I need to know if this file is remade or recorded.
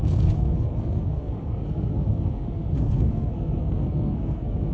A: remade